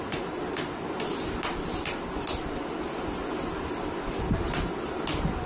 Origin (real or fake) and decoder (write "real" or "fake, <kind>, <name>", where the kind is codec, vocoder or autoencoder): real